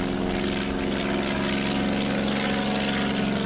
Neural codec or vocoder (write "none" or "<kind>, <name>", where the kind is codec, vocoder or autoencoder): none